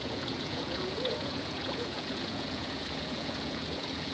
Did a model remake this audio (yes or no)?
yes